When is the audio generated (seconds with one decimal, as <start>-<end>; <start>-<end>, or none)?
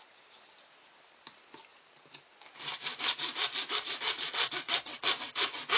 none